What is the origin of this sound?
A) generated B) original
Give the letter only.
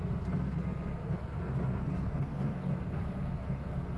A